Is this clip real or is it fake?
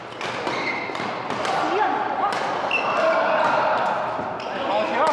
real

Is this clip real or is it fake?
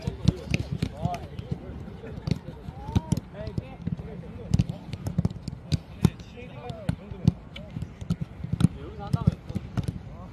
real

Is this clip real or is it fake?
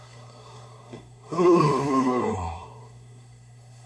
fake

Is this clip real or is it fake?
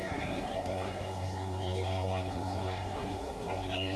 fake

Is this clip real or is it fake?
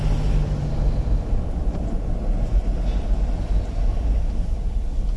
real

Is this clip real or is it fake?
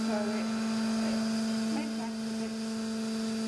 real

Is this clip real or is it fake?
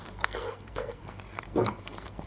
fake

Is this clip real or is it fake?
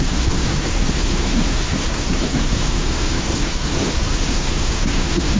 fake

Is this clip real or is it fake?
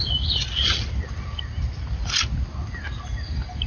real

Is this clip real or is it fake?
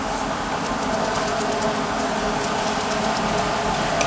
real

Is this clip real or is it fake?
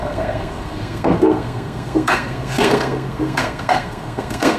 fake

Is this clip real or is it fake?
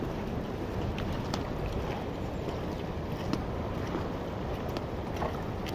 real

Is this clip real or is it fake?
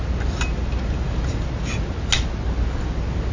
real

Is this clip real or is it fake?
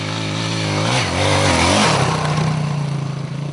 real